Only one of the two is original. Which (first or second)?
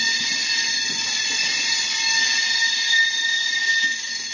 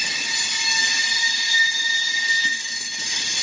first